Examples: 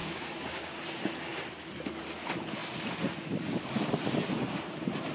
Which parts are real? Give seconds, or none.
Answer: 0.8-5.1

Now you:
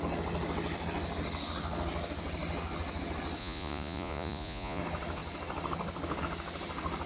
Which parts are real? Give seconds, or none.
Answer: 0.0-3.4; 4.8-7.1

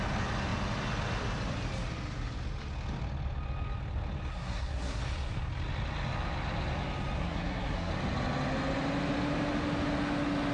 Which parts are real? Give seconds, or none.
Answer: 0.0-4.3; 5.0-7.2; 7.9-10.5

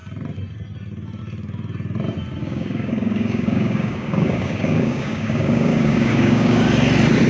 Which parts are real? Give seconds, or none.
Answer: 0.0-2.4; 6.6-7.3

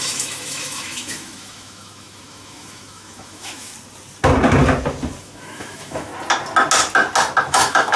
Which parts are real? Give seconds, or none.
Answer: 3.7-5.2; 6.1-7.4

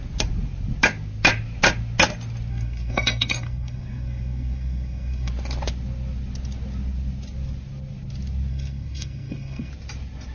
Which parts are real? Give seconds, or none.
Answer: 0.0-2.5; 5.3-8.5; 9.7-10.3

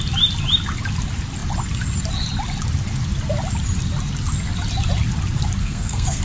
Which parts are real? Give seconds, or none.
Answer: 0.0-5.6